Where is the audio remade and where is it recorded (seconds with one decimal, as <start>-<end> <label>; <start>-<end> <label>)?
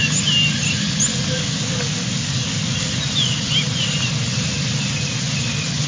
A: 0.0-1.1 recorded; 1.1-2.9 remade; 2.9-5.9 recorded